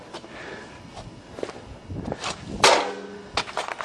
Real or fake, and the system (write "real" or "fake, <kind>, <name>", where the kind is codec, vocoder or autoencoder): real